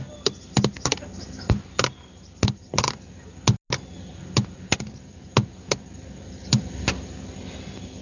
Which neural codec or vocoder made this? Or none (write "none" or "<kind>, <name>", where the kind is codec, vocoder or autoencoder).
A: none